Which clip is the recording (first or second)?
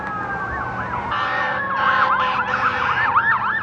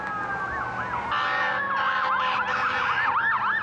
second